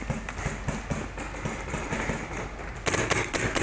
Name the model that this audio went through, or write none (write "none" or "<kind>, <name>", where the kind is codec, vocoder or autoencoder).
none